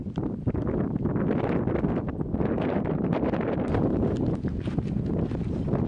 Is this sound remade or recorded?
recorded